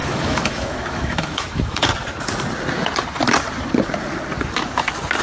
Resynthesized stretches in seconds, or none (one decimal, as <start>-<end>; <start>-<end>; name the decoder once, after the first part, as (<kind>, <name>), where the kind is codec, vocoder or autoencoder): 0.0-1.9 (autoencoder, DAC-VAE)